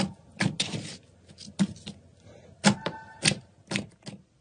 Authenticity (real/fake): real